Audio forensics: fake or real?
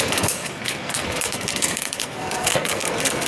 fake